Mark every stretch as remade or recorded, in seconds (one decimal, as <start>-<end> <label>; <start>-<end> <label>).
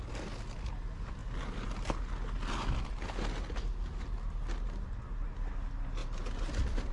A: 0.0-6.9 recorded